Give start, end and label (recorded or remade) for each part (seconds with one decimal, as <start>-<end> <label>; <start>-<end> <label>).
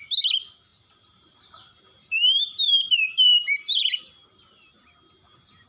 0.0-0.7 recorded; 0.7-4.1 remade; 4.1-5.7 recorded